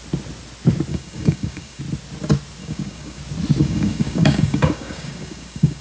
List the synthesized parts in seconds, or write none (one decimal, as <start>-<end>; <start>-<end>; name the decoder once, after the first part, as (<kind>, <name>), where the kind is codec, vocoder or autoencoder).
0.9-1.8 (codec, DAC); 2.6-3.2; 3.6-5.8